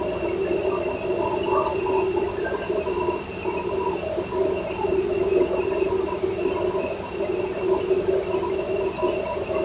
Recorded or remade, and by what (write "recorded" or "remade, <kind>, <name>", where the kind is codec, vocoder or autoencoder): recorded